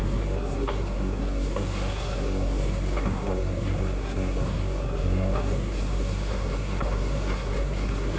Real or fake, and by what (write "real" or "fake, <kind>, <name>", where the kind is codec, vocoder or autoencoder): fake, codec, SNAC